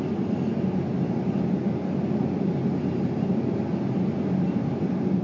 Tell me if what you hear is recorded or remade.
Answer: recorded